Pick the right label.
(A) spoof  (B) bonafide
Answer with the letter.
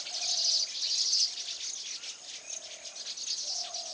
B